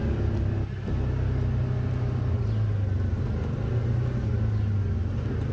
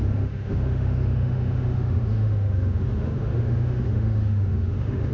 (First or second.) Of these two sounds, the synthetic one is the second